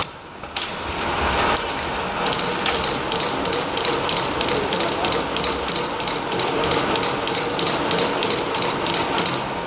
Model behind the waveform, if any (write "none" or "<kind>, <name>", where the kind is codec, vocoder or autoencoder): none